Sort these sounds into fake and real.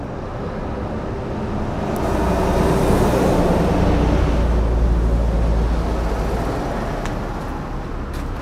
real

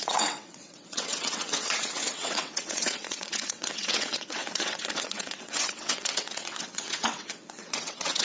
fake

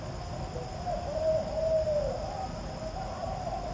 real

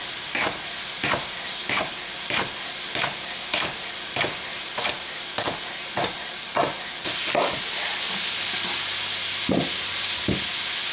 real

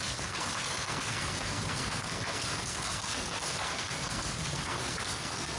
fake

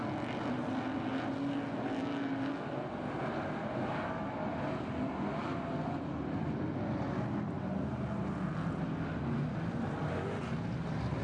real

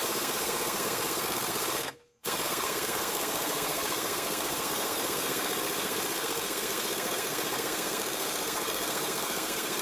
fake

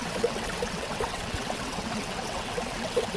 fake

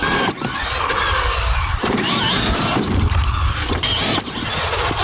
fake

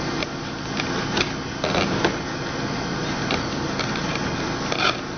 real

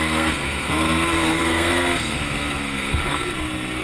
fake